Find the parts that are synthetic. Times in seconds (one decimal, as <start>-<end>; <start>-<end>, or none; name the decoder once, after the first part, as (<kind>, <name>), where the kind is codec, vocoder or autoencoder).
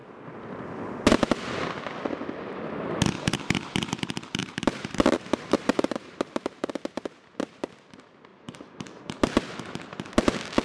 4.4-6.7 (vocoder, BigVGAN v2); 8.3-9.1